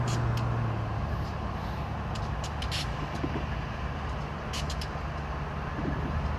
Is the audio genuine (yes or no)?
yes